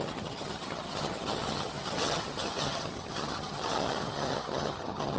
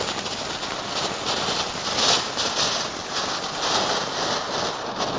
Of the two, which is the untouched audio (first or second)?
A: second